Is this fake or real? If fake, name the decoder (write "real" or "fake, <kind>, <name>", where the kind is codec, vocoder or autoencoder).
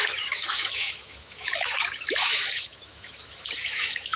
fake, autoencoder, DAC-VAE